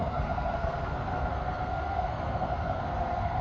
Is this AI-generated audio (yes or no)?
yes